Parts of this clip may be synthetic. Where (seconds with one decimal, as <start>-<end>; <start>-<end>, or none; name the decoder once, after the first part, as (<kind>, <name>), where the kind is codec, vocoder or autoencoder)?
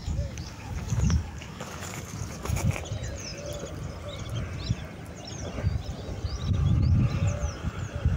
0.0-2.6 (codec, DAC)